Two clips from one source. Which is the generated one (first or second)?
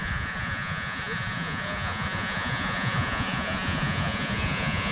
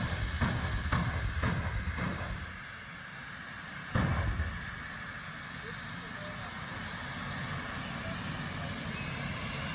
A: first